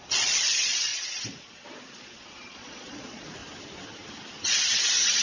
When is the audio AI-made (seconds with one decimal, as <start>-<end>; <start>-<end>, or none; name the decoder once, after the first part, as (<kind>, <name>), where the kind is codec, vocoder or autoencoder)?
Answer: 0.0-0.9 (vocoder, Vocos); 1.9-3.4; 4.8-5.2